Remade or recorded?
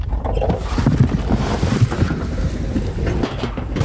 remade